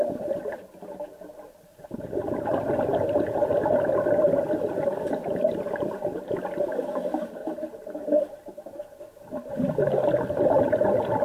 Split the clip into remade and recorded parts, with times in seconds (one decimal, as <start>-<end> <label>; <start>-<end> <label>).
0.0-7.4 recorded; 7.4-9.0 remade; 9.0-11.2 recorded